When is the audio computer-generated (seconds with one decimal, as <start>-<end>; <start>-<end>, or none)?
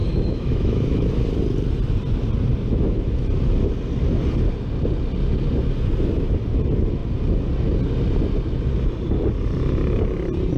0.0-1.4; 2.7-3.3